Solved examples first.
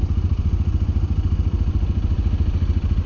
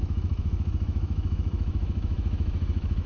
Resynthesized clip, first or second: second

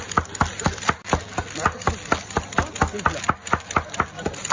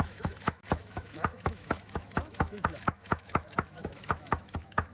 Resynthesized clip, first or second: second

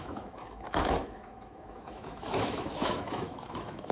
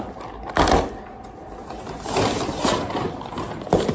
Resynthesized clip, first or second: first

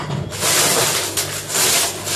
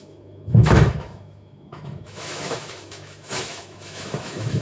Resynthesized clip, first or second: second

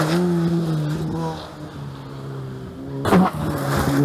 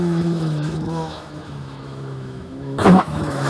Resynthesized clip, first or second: second